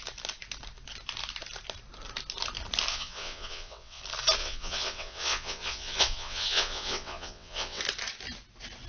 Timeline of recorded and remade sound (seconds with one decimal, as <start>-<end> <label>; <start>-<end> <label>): 0.0-2.9 recorded; 2.9-4.0 remade; 4.0-4.4 recorded; 4.4-7.8 remade; 7.8-8.9 recorded